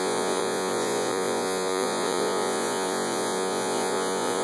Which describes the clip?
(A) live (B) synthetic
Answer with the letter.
B